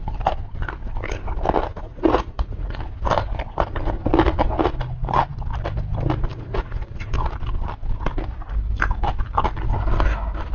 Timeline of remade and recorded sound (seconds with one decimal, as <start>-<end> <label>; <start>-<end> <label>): 0.0-1.7 recorded; 1.7-2.8 remade; 2.8-6.3 recorded; 6.3-7.3 remade; 7.3-10.5 recorded